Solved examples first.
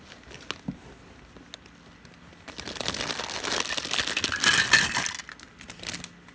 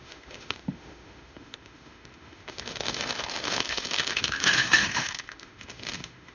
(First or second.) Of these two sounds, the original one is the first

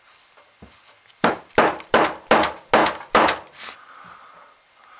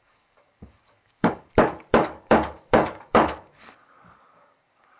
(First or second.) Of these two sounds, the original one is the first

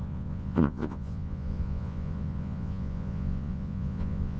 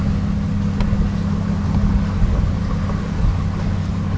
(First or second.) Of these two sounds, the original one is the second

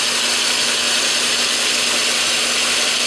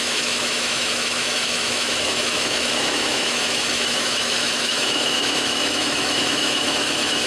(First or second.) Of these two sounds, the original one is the first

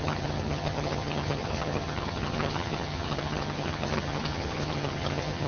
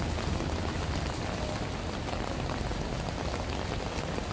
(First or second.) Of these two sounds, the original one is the second